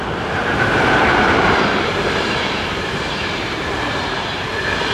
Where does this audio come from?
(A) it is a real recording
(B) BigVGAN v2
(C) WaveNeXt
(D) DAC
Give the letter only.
B